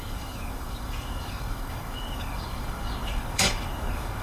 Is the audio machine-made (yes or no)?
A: yes